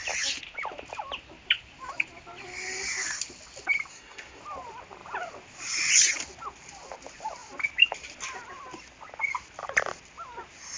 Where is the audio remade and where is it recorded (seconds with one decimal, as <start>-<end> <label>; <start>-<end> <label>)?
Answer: 0.0-3.9 recorded; 3.9-4.4 remade; 4.4-10.8 recorded